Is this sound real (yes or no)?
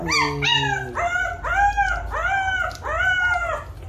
yes